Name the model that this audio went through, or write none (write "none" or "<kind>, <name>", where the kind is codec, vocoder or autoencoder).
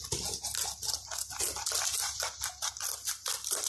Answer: none